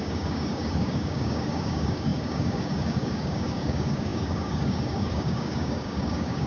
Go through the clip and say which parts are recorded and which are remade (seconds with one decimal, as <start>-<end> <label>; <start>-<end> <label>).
0.0-6.5 remade